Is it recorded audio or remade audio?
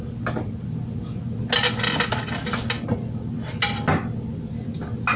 recorded